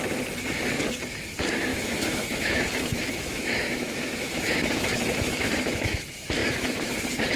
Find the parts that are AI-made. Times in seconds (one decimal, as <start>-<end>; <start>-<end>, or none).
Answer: 1.7-6.0; 6.4-6.9